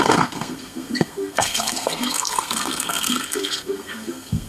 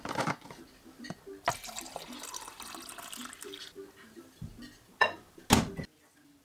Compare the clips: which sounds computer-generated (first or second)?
first